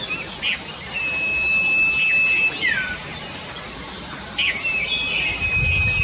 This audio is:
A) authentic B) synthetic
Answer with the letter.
A